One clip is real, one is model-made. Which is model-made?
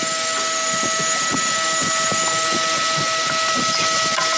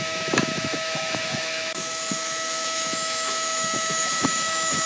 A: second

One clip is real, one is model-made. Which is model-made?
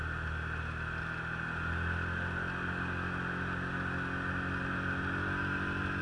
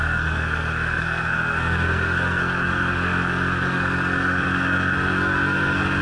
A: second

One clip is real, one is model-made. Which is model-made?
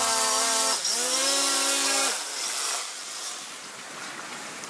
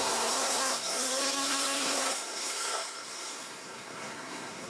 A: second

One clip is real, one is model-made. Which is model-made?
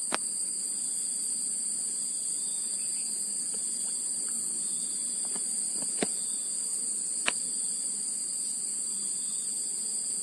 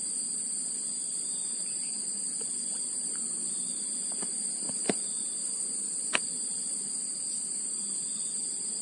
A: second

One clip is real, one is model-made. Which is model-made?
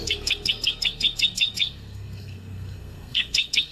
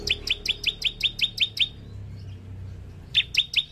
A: first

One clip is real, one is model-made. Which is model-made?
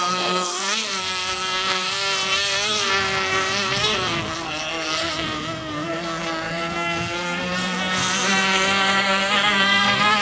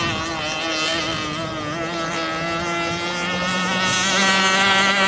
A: first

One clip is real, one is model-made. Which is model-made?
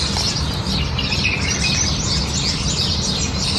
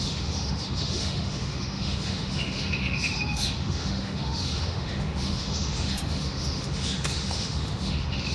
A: second